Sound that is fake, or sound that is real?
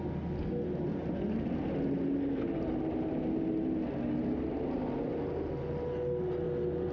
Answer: real